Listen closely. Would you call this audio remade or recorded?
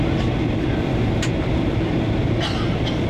recorded